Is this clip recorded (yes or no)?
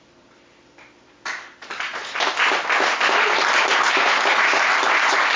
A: yes